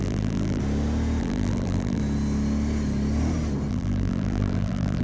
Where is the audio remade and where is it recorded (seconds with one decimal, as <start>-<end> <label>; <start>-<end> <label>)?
0.0-0.6 remade; 0.6-1.2 recorded; 1.2-2.0 remade; 2.0-3.7 recorded; 3.7-5.0 remade